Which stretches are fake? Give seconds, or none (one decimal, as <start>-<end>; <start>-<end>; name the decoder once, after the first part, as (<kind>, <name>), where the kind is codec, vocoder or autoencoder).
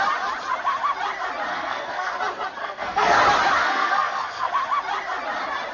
1.5-2.2 (codec, SNAC); 2.6-3.2; 3.6-4.5